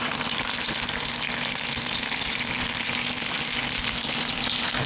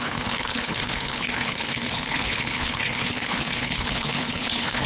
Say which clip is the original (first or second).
first